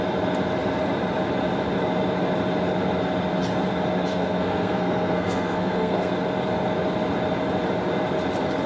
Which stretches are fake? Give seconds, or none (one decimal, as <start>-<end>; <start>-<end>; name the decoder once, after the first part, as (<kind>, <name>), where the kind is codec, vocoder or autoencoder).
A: 4.1-6.1 (codec, SNAC)